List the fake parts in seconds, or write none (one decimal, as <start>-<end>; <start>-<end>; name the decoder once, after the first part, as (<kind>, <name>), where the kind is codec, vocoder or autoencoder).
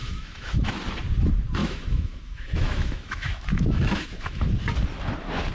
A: 0.0-0.7 (autoencoder, DAC-VAE); 1.6-4.5